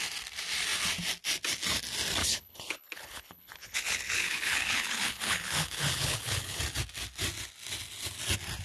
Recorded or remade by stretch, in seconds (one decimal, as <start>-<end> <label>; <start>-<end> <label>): 0.0-2.2 recorded; 2.2-6.6 remade; 6.6-8.6 recorded